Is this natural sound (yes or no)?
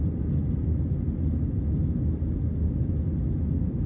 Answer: yes